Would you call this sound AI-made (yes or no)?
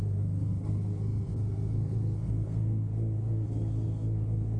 yes